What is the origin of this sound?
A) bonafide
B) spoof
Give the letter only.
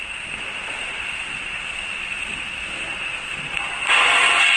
B